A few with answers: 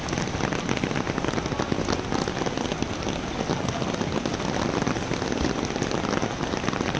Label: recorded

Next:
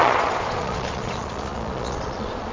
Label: remade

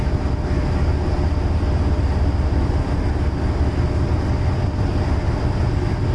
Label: recorded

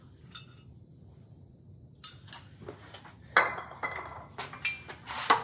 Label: recorded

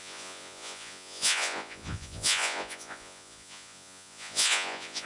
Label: remade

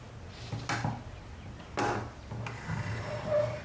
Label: recorded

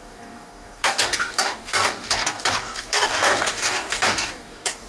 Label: remade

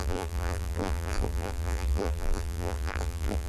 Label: remade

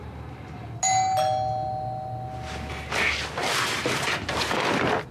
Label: recorded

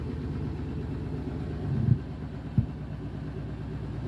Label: recorded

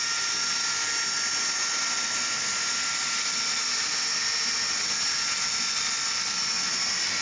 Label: recorded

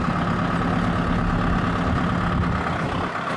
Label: recorded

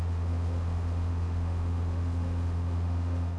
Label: remade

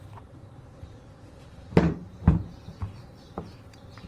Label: remade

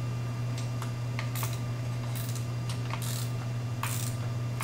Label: recorded